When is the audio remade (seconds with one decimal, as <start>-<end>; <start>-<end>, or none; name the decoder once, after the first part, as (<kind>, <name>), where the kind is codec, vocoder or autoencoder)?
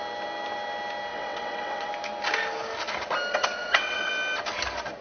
1.1-1.9 (vocoder, WaveNeXt); 3.3-4.1